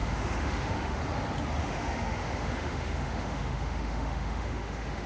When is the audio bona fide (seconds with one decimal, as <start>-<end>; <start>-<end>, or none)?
1.0-1.6